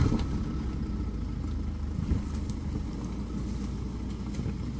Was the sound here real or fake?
real